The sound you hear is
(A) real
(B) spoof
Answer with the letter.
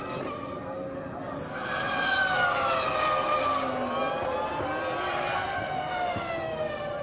A